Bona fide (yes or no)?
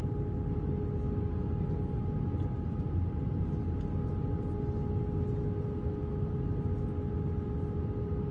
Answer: yes